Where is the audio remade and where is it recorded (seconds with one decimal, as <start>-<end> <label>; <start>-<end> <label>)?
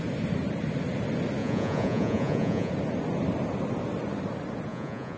0.0-1.4 recorded; 1.4-2.7 remade; 2.7-4.7 recorded; 4.7-5.2 remade